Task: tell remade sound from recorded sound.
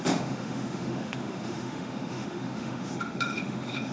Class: remade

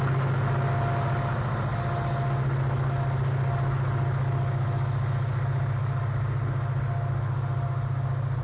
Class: recorded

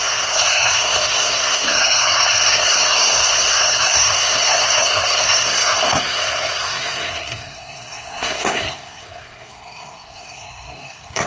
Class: remade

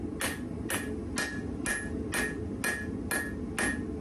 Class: recorded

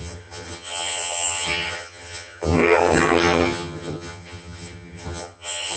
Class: remade